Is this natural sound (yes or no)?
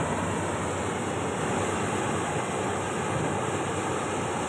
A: yes